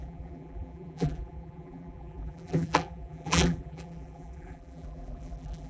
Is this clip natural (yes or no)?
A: no